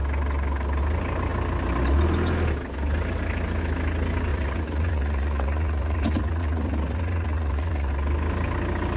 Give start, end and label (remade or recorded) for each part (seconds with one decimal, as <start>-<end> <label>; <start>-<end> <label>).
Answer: 0.0-4.3 recorded; 4.3-7.9 remade; 7.9-9.0 recorded

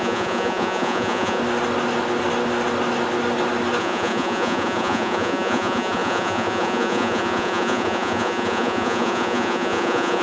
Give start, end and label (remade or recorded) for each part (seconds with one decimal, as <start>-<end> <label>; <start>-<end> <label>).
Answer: 0.0-1.4 remade; 1.4-3.8 recorded; 3.8-10.2 remade